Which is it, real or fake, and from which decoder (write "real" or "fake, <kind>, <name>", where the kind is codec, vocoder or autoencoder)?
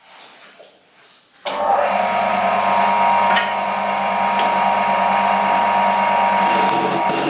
real